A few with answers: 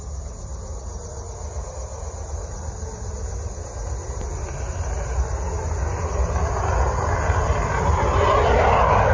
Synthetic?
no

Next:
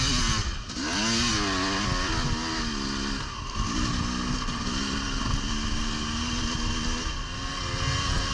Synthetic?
no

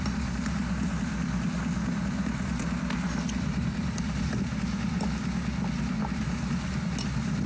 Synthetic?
no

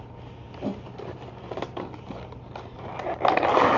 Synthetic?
no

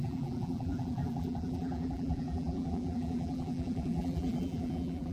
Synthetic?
yes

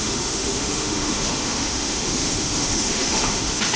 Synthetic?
yes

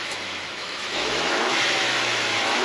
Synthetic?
yes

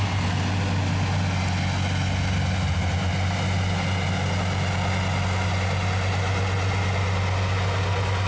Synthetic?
no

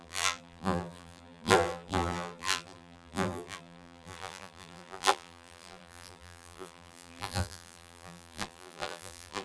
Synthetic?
yes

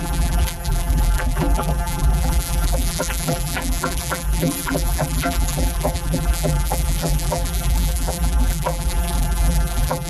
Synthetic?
yes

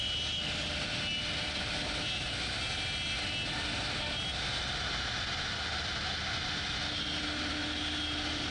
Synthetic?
no